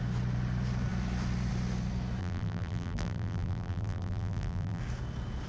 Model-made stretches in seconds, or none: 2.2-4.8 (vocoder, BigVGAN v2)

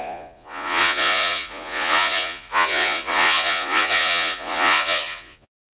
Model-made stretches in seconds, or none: 0.0-5.7 (vocoder, Vocos)

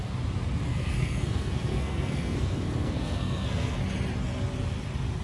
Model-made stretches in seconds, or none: 0.7-3.8 (codec, SNAC)

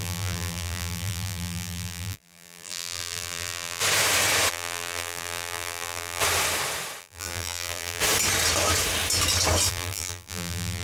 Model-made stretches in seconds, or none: 0.0-3.8 (vocoder, BigVGAN v2); 4.5-6.2; 7.0-8.0; 9.7-10.8

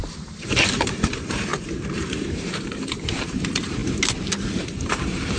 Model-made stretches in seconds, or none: 0.0-3.8 (vocoder, BigVGAN v2); 4.6-5.4